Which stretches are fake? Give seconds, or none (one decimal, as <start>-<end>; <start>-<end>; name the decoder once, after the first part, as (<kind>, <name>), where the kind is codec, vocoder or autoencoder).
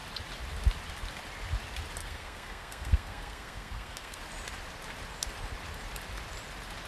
2.0-4.2 (codec, SNAC)